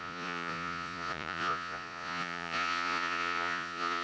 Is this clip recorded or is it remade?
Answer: remade